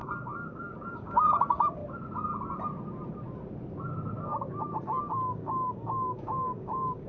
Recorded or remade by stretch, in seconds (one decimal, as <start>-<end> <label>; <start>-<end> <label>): 0.0-1.8 remade; 1.8-5.0 recorded; 5.0-7.1 remade